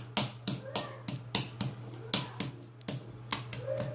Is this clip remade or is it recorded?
recorded